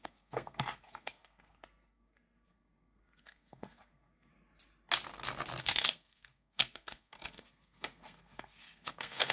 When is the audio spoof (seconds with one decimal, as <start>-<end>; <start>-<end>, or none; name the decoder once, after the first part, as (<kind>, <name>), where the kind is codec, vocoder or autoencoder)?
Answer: 0.0-4.3 (codec, SNAC); 5.6-9.3